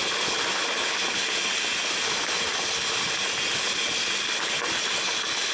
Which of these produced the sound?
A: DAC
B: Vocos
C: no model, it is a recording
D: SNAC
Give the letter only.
C